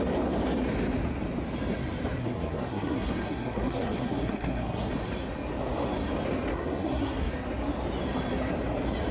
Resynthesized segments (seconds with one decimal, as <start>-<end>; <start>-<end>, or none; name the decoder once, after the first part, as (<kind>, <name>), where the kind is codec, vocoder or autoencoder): 2.2-4.9 (codec, SNAC); 6.5-7.3